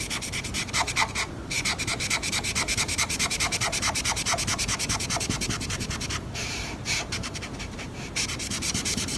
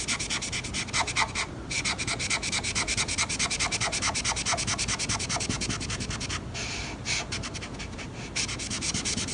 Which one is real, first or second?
second